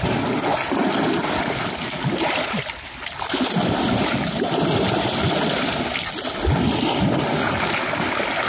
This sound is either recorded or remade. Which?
recorded